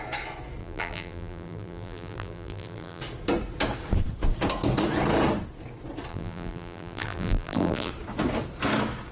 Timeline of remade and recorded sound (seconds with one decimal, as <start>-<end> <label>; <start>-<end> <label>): 0.0-0.6 recorded; 0.6-3.0 remade; 3.0-6.1 recorded; 6.1-7.9 remade; 7.9-9.1 recorded